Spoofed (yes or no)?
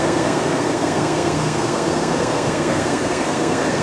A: yes